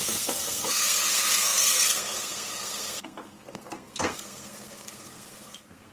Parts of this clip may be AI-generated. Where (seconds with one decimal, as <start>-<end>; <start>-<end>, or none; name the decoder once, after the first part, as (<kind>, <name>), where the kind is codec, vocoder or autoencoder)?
0.0-5.9 (codec, SNAC)